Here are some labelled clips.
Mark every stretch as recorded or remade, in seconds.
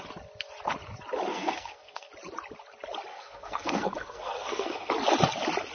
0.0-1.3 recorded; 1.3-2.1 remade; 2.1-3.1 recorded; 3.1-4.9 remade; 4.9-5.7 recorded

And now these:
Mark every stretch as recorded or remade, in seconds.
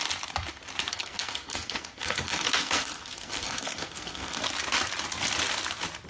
0.0-0.9 recorded; 0.9-4.4 remade; 4.4-6.1 recorded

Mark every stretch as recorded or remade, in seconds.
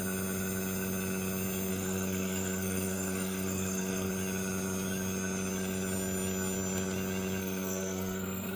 0.0-1.7 recorded; 1.7-4.1 remade; 4.1-7.4 recorded; 7.4-8.6 remade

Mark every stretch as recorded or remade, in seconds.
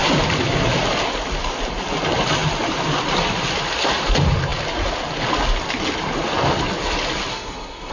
0.0-7.3 recorded; 7.3-7.9 remade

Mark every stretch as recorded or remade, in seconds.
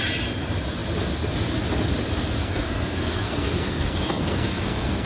0.0-2.4 recorded; 2.4-5.1 remade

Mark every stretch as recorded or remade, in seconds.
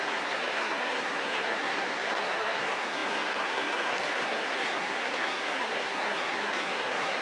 0.0-7.2 remade